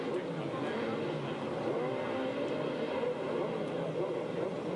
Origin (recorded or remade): recorded